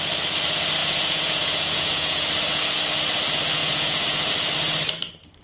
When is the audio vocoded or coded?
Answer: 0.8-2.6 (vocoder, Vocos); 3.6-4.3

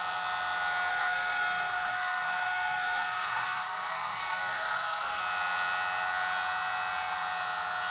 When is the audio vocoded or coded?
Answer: 0.9-5.2 (codec, SNAC)

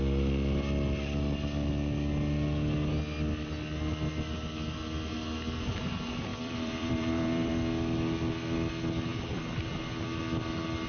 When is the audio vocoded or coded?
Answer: 6.3-7.5 (vocoder, BigVGAN v2)

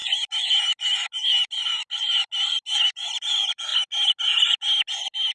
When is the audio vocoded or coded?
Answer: 3.2-3.7 (vocoder, BigVGAN v2)

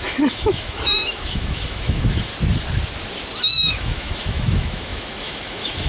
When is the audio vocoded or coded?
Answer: 0.0-2.3 (autoencoder, DAC-VAE); 3.7-5.9

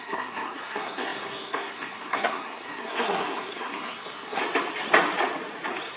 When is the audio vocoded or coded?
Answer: 0.0-4.4 (codec, SNAC)

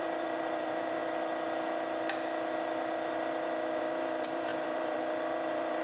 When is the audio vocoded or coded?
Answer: 0.0-1.0 (vocoder, BigVGAN v2); 3.8-5.8

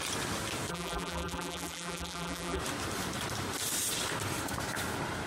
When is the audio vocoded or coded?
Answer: 0.7-2.6 (vocoder, BigVGAN v2)